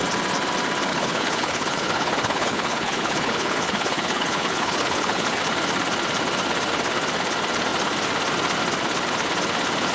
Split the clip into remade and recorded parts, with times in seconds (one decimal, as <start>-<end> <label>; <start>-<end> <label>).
0.0-0.9 recorded; 0.9-5.4 remade; 5.4-9.9 recorded